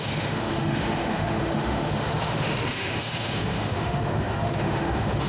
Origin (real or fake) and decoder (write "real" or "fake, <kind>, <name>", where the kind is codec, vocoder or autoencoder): fake, autoencoder, DAC-VAE